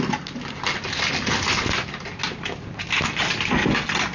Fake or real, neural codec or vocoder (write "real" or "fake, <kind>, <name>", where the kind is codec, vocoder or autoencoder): real